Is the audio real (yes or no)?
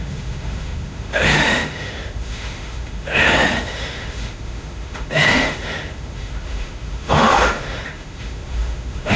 no